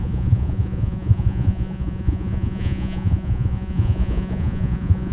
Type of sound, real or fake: fake